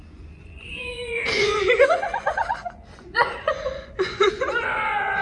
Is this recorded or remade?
remade